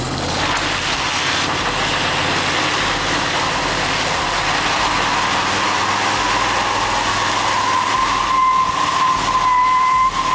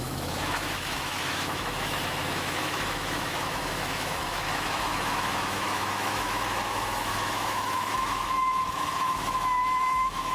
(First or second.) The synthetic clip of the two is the second